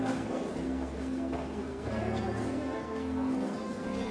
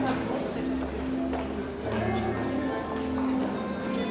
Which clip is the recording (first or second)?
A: second